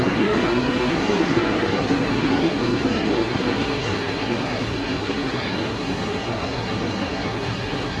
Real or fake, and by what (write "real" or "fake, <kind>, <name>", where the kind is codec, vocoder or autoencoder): fake, codec, SNAC